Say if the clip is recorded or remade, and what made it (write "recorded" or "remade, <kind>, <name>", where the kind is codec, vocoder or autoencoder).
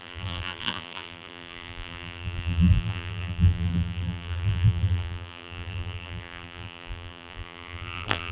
remade, vocoder, BigVGAN v2